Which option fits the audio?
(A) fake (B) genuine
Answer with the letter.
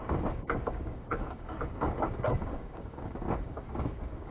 A